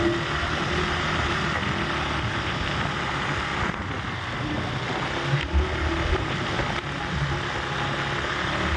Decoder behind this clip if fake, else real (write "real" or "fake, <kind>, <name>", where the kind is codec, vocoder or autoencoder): real